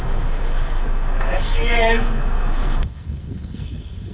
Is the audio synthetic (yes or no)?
yes